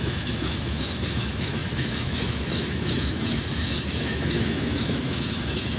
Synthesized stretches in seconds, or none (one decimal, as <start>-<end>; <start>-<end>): 0.0-5.8